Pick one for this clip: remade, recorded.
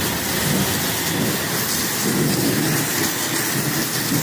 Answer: recorded